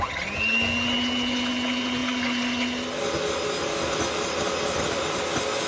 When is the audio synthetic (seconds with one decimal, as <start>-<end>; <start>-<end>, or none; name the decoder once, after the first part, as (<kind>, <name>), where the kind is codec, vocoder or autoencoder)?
none

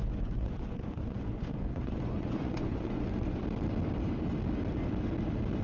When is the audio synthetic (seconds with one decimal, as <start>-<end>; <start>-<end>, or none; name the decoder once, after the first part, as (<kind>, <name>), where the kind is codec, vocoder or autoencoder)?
0.0-3.4 (vocoder, Vocos)